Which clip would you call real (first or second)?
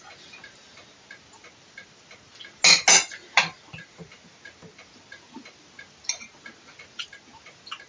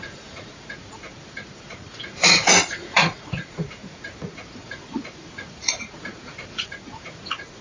first